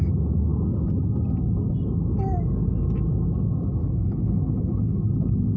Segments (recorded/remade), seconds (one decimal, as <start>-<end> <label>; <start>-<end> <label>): 0.0-3.8 recorded; 3.8-5.0 remade; 5.0-5.6 recorded